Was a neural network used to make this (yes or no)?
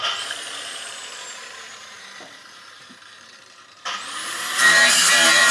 yes